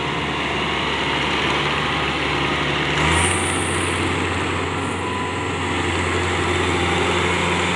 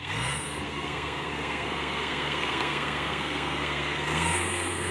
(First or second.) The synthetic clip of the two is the second